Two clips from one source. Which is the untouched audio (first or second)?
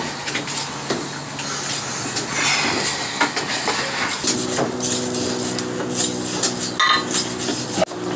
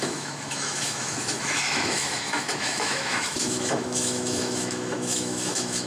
first